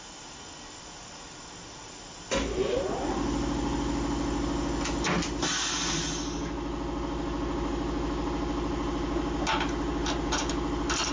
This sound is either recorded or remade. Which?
recorded